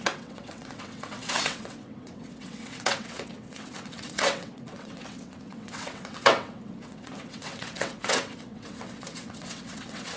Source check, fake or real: fake